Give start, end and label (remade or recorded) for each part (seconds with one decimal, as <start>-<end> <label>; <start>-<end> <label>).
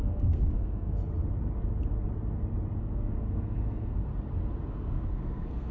0.0-1.0 remade; 1.0-2.8 recorded; 2.8-4.1 remade; 4.1-4.7 recorded; 4.7-5.7 remade